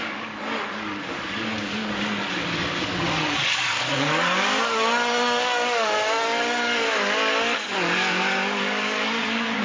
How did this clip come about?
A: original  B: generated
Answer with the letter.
B